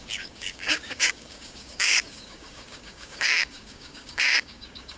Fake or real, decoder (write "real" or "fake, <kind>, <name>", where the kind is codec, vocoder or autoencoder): fake, codec, DAC